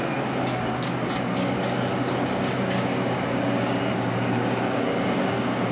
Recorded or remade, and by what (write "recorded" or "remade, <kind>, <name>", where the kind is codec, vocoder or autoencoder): remade, codec, DAC